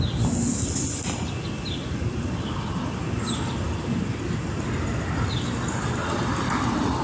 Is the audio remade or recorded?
recorded